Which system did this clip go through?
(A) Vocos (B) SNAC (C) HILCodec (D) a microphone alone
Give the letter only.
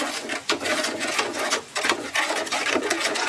A